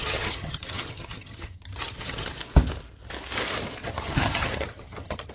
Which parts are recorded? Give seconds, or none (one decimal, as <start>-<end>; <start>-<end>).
2.4-3.8